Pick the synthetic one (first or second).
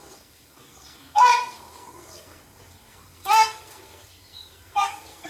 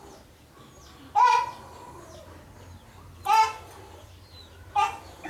first